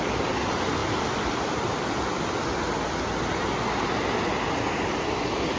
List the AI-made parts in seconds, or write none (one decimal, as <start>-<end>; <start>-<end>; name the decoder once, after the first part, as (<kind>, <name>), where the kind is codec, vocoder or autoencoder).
none